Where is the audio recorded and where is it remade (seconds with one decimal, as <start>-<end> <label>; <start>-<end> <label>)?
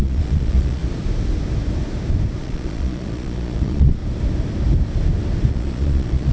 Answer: 0.0-0.8 remade; 0.8-2.4 recorded; 2.4-4.0 remade; 4.0-5.5 recorded; 5.5-6.3 remade